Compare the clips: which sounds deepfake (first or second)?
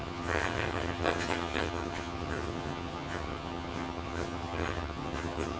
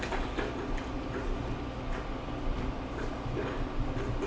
first